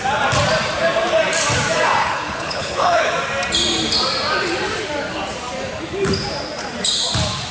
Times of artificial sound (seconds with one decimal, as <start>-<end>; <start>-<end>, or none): 2.0-3.1